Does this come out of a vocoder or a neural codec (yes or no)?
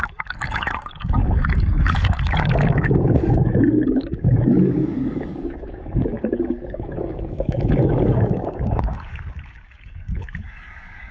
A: yes